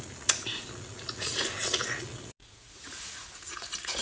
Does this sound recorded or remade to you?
remade